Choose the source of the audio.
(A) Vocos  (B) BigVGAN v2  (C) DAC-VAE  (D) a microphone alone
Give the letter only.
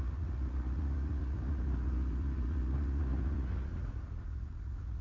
A